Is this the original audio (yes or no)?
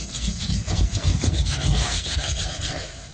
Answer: no